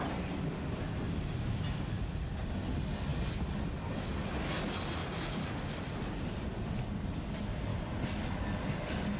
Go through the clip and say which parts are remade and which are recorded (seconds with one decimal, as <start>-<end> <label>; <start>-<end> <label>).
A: 0.0-5.0 recorded; 5.0-6.3 remade; 6.3-7.7 recorded; 7.7-8.3 remade; 8.3-9.2 recorded